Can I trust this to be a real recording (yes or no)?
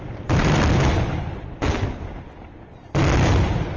yes